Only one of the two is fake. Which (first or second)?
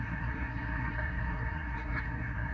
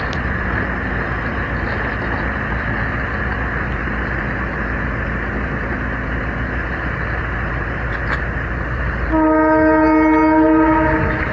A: first